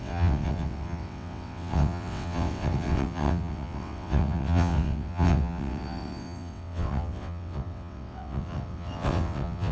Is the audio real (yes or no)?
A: no